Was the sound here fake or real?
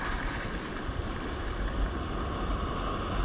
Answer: real